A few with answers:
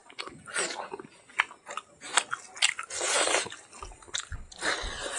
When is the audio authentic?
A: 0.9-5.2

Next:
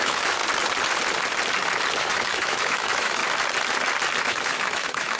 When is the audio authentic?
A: 0.4-2.0; 3.2-4.2

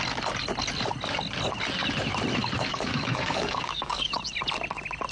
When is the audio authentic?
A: 0.0-2.7; 4.1-5.1

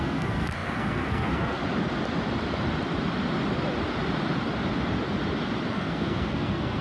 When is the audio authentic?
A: 1.6-5.7